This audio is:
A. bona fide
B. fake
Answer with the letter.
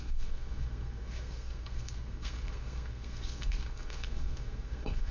B